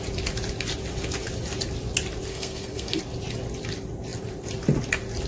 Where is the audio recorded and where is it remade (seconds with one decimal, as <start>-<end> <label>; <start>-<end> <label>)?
0.0-2.3 recorded; 2.3-3.0 remade; 3.0-5.3 recorded